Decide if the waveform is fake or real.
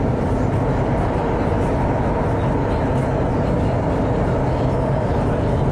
real